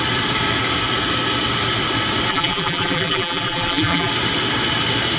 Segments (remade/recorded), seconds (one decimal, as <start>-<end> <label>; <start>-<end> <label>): 0.0-2.3 recorded; 2.3-4.1 remade; 4.1-5.2 recorded